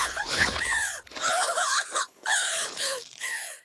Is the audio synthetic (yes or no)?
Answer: yes